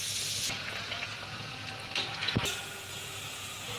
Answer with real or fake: fake